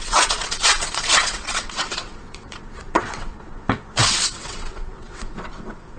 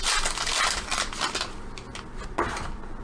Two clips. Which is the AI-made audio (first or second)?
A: first